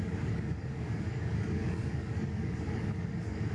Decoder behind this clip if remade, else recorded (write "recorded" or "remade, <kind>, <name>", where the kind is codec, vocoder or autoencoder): remade, codec, DAC